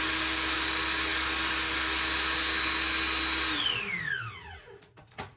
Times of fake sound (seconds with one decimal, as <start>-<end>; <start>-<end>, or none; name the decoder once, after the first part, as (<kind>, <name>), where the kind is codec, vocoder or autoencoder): 4.4-5.4 (vocoder, Vocos)